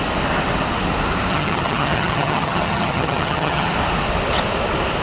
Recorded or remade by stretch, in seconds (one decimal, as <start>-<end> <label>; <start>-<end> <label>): 0.0-1.3 recorded; 1.3-3.7 remade; 3.7-5.0 recorded